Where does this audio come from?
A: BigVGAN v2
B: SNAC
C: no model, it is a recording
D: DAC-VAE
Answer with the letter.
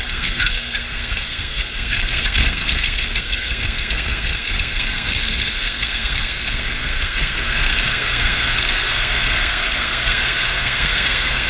B